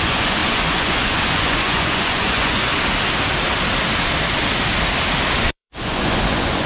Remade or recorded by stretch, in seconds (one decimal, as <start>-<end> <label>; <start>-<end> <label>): 0.0-2.7 remade; 2.7-5.4 recorded; 5.4-6.7 remade